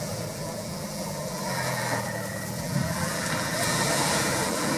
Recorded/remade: remade